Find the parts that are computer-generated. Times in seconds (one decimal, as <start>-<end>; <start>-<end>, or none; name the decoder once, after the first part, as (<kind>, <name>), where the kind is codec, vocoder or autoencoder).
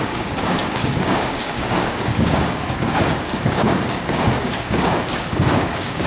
0.0-6.1 (codec, DAC)